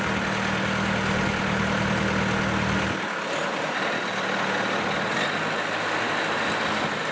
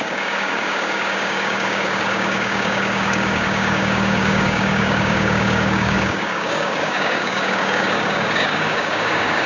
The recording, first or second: first